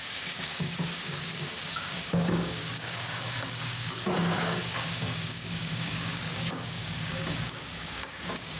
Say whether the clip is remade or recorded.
remade